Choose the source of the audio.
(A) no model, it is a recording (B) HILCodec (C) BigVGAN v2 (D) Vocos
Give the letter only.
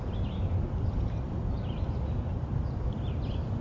A